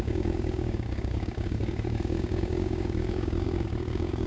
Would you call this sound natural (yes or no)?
no